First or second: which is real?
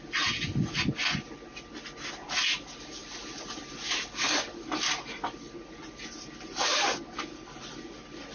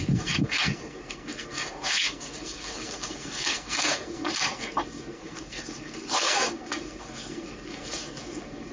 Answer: first